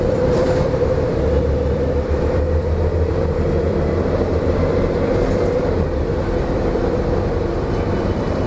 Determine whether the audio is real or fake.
fake